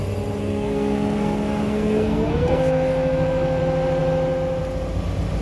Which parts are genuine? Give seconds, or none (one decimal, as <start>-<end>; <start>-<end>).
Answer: 0.0-0.4; 3.6-5.4